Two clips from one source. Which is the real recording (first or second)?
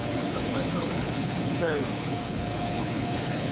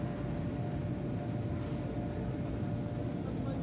second